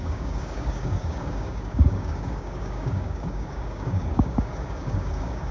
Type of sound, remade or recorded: remade